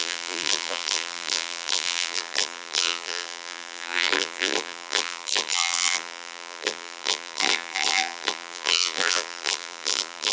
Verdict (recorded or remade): remade